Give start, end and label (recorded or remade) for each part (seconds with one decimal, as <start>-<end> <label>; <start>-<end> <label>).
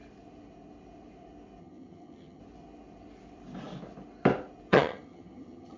0.0-1.6 recorded; 1.6-2.4 remade; 2.4-4.7 recorded; 4.7-5.8 remade